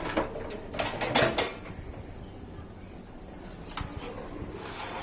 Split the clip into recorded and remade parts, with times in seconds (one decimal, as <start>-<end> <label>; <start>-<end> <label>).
0.0-5.0 recorded